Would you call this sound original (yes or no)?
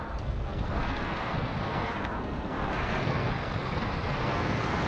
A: no